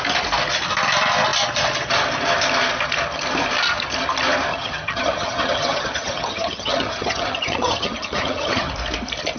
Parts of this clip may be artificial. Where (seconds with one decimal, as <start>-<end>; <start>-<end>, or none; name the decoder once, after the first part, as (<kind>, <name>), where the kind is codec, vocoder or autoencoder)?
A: 4.5-8.7 (vocoder, HiFi-GAN)